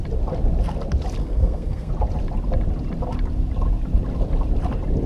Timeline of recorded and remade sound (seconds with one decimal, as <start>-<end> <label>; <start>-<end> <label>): 0.0-1.2 recorded; 1.2-1.9 remade; 1.9-5.1 recorded